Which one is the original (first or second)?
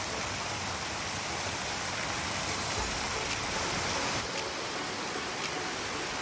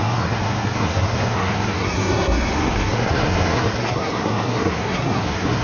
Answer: first